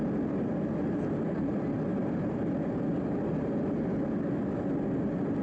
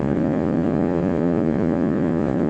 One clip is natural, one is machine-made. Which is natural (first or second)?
first